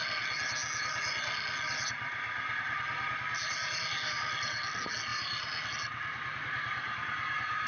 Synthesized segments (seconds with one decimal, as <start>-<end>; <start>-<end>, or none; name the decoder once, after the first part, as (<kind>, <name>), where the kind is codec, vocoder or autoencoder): 5.1-5.7 (vocoder, BigVGAN v2)

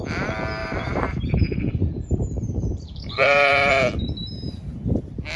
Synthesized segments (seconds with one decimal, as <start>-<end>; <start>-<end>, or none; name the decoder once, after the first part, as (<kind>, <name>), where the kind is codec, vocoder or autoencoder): 0.6-3.8 (vocoder, BigVGAN v2)

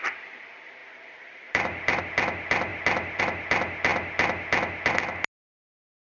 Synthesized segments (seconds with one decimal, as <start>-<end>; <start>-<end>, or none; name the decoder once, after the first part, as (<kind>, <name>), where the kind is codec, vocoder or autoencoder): 0.8-2.0 (vocoder, BigVGAN v2)

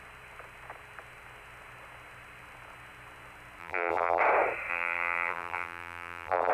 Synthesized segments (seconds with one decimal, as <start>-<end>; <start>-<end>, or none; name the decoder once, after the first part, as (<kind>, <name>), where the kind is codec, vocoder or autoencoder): 3.6-4.2 (vocoder, BigVGAN v2); 4.7-6.5